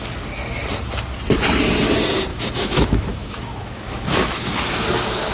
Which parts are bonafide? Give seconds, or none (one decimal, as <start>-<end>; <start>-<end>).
0.0-2.3; 4.6-5.3